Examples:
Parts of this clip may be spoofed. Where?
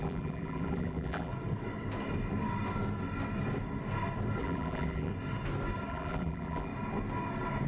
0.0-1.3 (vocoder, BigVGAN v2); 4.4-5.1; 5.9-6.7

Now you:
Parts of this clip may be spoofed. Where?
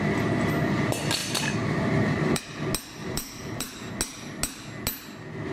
1.2-2.4 (vocoder, BigVGAN v2); 3.0-3.9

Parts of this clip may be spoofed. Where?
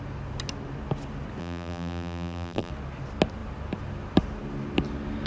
1.4-2.7 (vocoder, BigVGAN v2)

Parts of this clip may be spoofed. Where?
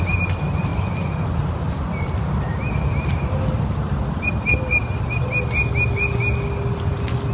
none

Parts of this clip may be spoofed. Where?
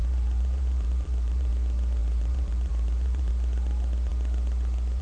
0.0-1.5 (vocoder, BigVGAN v2); 2.0-3.3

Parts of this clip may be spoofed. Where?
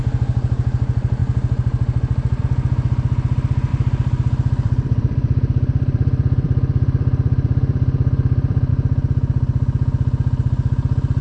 3.7-8.7 (vocoder, BigVGAN v2)